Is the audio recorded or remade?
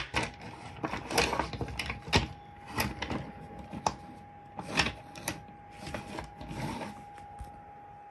recorded